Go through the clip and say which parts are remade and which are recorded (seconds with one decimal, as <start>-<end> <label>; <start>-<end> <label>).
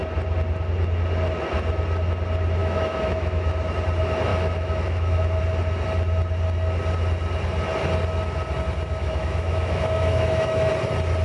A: 0.0-2.6 recorded; 2.6-3.5 remade; 3.5-4.3 recorded; 4.3-5.4 remade; 5.4-9.0 recorded; 9.0-10.7 remade; 10.7-11.2 recorded